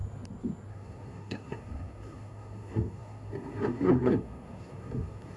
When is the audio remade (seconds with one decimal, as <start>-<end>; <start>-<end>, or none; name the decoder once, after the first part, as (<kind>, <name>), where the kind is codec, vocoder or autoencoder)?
0.7-5.4 (codec, SNAC)